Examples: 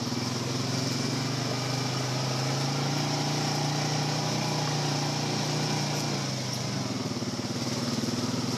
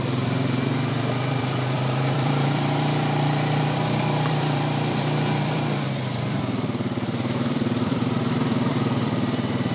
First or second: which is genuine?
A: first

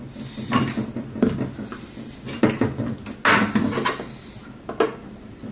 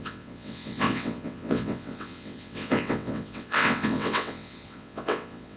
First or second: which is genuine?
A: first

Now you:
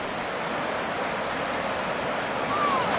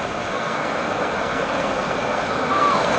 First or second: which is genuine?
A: first